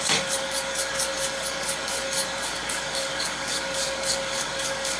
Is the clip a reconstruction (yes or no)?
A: yes